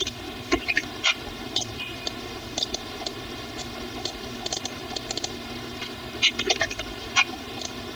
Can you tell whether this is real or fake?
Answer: fake